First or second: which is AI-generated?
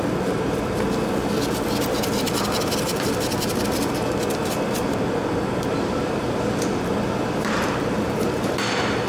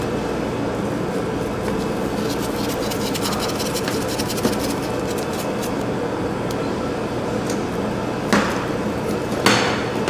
first